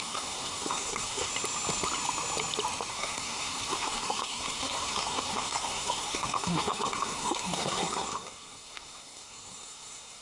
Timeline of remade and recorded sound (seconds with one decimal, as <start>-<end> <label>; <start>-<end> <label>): 0.0-1.3 remade; 1.3-2.9 recorded; 2.9-10.2 remade